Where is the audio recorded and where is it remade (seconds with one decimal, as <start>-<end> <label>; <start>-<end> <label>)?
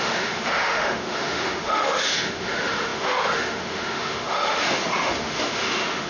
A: 0.0-6.1 remade